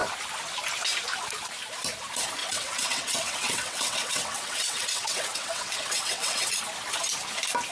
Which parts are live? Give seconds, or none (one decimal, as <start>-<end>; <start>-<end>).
0.0-2.4; 6.5-7.7